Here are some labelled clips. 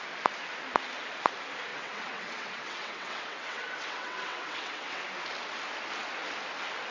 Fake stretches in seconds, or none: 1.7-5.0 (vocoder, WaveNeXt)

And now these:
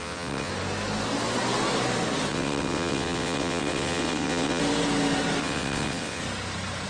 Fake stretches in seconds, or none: 0.0-0.5 (vocoder, WaveNeXt); 2.3-4.6; 5.4-6.2